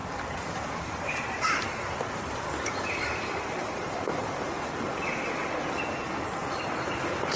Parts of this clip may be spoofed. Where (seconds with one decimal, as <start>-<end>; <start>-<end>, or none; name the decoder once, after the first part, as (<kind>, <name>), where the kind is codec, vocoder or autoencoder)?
0.0-4.3 (vocoder, BigVGAN v2); 6.4-7.4